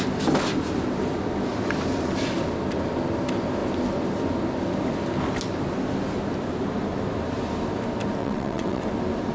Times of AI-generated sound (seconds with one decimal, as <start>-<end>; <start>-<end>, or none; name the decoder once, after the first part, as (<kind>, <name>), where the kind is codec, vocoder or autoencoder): 8.2-8.8 (vocoder, WaveNeXt)